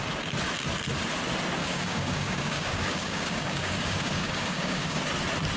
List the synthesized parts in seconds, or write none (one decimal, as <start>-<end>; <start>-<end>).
1.6-5.0